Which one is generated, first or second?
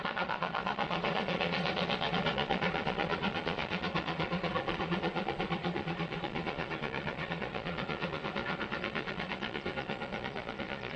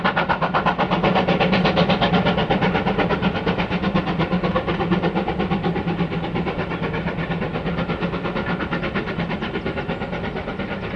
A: first